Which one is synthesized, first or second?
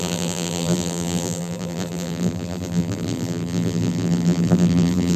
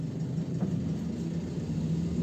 first